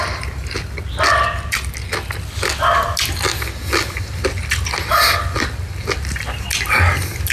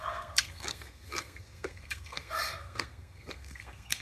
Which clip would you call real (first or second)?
first